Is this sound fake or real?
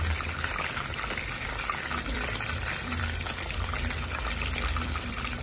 fake